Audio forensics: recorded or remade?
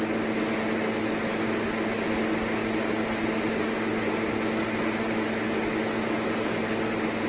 recorded